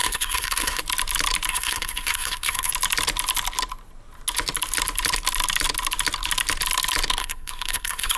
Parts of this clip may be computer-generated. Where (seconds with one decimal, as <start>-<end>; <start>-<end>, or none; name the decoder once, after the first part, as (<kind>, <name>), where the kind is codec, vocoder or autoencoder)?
0.0-0.8 (codec, SNAC); 1.5-2.7; 7.2-8.2